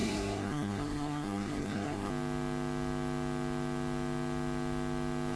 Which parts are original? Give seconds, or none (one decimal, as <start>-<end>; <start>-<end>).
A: 2.1-5.4